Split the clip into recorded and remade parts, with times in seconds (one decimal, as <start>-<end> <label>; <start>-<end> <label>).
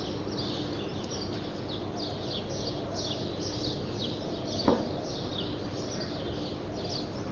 0.0-7.3 recorded